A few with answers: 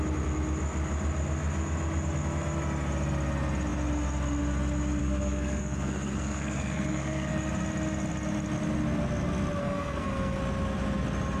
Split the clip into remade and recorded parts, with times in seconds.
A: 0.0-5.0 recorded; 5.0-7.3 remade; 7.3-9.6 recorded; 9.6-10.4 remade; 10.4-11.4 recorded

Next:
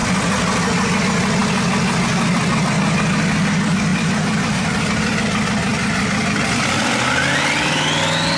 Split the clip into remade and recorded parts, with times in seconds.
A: 0.0-3.9 recorded; 3.9-5.2 remade; 5.2-8.4 recorded

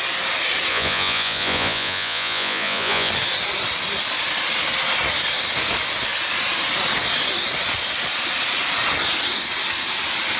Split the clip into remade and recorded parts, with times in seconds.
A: 0.0-0.7 recorded; 0.7-3.1 remade; 3.1-10.4 recorded